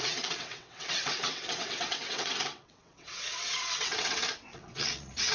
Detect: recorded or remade remade